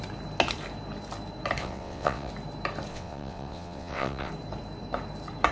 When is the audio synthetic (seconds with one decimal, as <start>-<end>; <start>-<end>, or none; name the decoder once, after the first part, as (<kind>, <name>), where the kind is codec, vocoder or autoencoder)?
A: 1.6-2.3 (vocoder, WaveNeXt); 2.9-4.3